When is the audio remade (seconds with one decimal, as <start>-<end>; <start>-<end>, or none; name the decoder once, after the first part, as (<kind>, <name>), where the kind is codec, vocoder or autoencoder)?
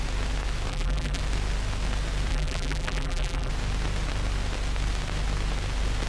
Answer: 0.7-1.2 (vocoder, BigVGAN v2); 2.3-3.5